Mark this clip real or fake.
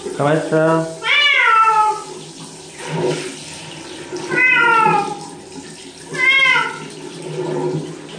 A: real